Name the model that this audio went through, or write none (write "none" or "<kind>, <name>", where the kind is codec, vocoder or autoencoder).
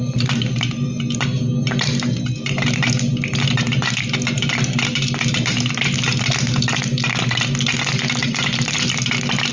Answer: none